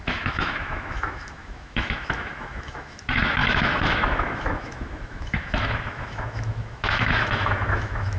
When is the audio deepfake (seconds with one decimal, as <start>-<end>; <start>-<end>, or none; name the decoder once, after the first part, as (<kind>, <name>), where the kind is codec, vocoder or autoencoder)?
0.0-8.2 (autoencoder, DAC-VAE)